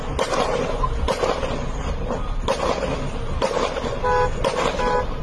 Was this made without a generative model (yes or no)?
yes